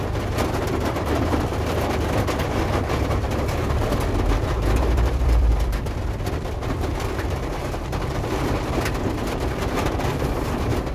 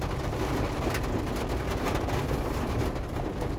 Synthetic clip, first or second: first